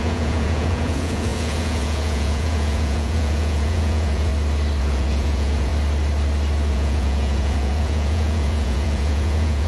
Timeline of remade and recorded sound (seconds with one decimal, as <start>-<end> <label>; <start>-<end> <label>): 0.0-4.3 remade; 4.3-4.8 recorded; 4.8-5.7 remade; 5.7-6.7 recorded; 6.7-9.7 remade